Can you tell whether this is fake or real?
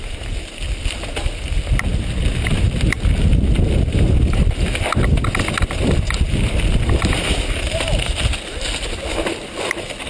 real